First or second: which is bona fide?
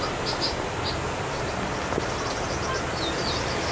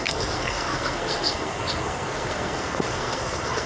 first